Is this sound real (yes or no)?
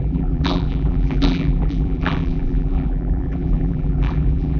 no